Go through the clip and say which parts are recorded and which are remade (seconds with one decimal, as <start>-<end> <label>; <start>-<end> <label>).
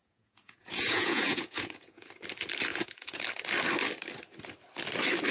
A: 0.0-2.1 remade; 2.1-2.7 recorded; 2.7-3.2 remade; 3.2-5.3 recorded